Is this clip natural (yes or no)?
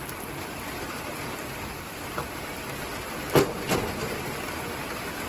no